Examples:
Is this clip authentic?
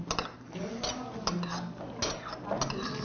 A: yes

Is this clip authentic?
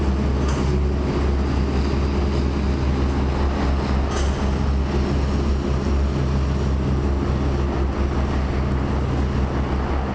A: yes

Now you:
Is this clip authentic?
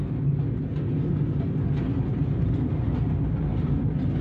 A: yes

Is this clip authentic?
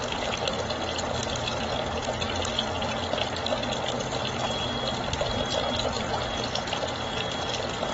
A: yes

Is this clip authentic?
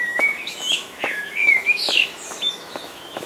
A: no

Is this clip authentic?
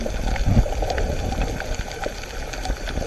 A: yes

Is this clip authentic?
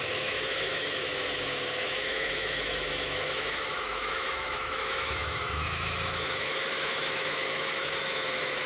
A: no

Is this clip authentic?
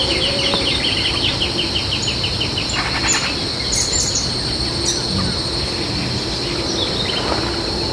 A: yes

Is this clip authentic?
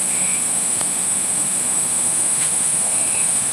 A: no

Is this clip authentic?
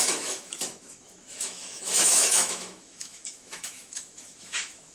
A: no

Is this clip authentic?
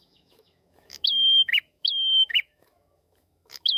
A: no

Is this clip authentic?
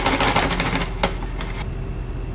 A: yes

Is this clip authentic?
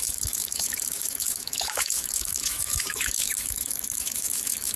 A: no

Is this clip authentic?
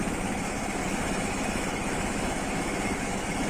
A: no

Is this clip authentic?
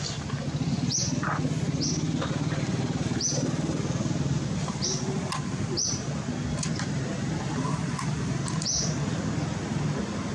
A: yes